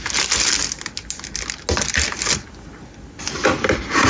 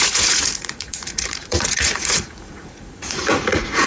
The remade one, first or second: second